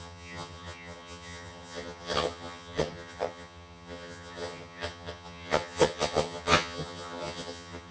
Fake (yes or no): yes